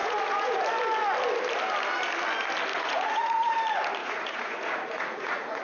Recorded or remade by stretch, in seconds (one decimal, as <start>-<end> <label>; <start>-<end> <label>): 0.0-0.6 remade; 0.6-2.7 recorded; 2.7-3.6 remade; 3.6-4.0 recorded; 4.0-5.6 remade